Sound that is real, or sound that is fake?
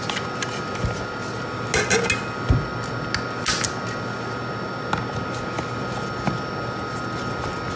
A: real